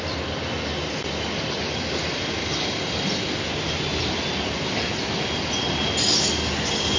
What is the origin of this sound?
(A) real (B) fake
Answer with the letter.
A